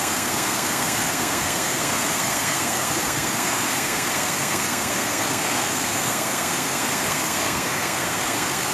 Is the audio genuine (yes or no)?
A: no